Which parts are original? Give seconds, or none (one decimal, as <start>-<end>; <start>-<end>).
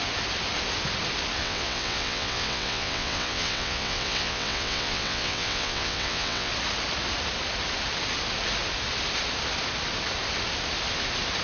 0.0-1.4; 6.5-11.4